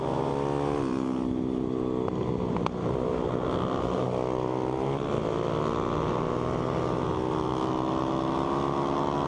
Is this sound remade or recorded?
recorded